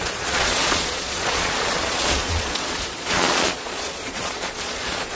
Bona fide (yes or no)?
no